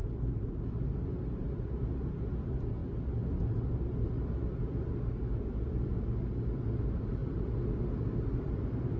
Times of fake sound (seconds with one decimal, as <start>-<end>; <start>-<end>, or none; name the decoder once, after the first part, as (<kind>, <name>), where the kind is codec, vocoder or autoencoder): none